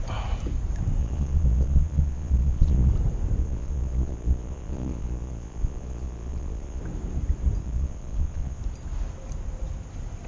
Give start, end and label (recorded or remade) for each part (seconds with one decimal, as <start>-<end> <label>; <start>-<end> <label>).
0.0-1.0 recorded; 1.0-2.9 remade; 2.9-3.4 recorded; 3.4-6.8 remade; 6.8-7.6 recorded; 7.6-8.6 remade; 8.6-10.3 recorded